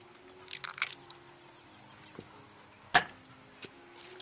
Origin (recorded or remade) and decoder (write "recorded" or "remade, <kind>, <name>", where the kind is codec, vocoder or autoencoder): recorded